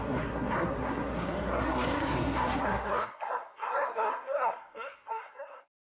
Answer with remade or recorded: remade